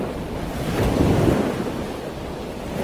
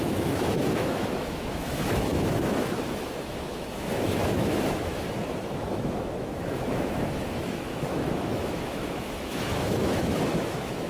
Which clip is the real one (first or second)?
first